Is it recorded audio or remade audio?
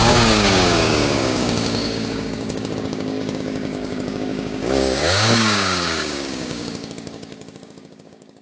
remade